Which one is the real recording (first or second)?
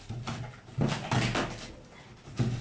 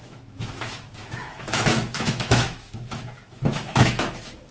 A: first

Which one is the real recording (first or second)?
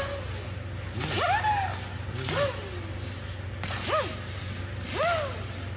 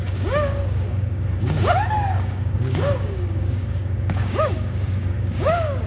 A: first